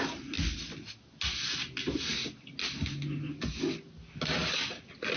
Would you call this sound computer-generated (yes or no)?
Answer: no